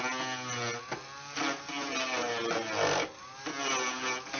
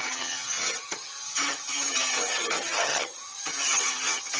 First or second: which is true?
first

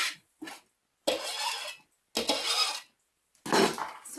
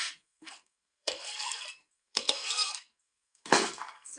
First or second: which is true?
first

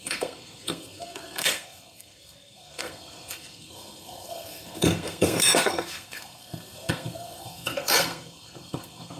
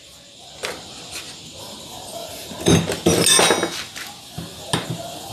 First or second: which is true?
second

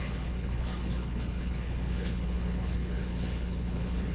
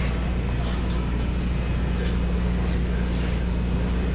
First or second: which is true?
second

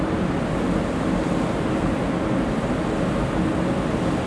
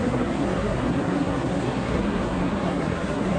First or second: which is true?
first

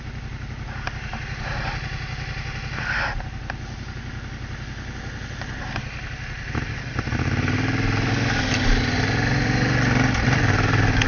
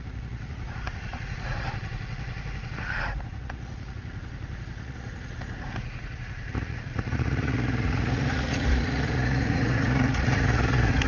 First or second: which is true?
first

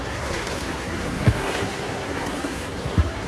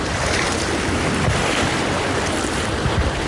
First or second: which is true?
second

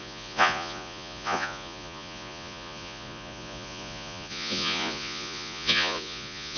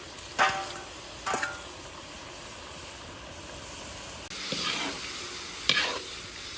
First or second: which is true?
second